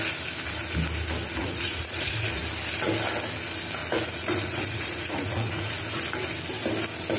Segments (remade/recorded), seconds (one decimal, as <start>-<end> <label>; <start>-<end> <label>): 0.0-1.4 recorded; 1.4-2.4 remade; 2.4-3.8 recorded; 3.8-5.8 remade; 5.8-7.2 recorded